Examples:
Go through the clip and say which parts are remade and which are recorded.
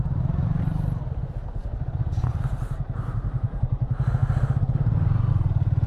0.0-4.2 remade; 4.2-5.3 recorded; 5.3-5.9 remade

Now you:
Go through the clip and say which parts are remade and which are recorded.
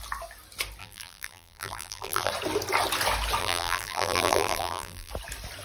0.0-0.8 recorded; 0.8-2.3 remade; 2.3-3.4 recorded; 3.4-5.1 remade; 5.1-5.6 recorded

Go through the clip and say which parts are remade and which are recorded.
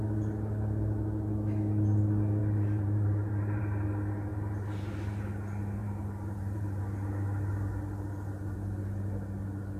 0.0-2.4 recorded; 2.4-3.6 remade; 3.6-4.3 recorded; 4.3-5.2 remade; 5.2-5.8 recorded; 5.8-6.8 remade; 6.8-9.8 recorded